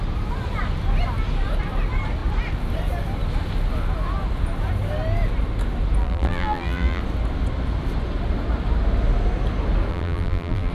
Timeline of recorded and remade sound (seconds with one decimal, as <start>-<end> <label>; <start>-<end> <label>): 0.0-6.0 recorded; 6.0-7.0 remade; 7.0-9.9 recorded; 9.9-10.7 remade

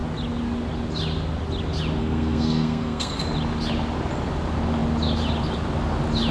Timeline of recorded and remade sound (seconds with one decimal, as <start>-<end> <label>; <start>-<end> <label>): 0.0-2.0 recorded; 2.0-3.2 remade; 3.2-6.3 recorded

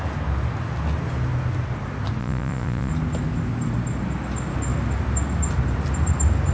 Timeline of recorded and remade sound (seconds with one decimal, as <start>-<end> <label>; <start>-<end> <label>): 0.0-2.2 recorded; 2.2-2.9 remade; 2.9-6.5 recorded

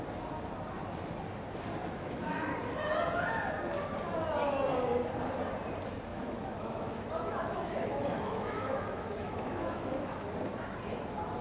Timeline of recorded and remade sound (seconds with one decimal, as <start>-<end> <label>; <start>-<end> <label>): 0.0-1.8 recorded; 1.8-2.5 remade; 2.5-6.1 recorded; 6.1-10.3 remade; 10.3-11.4 recorded